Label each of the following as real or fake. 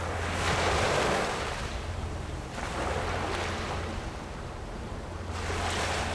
real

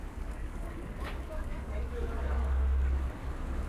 fake